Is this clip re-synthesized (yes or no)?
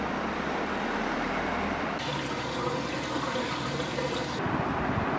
no